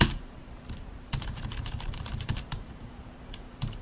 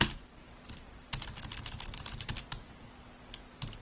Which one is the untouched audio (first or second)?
second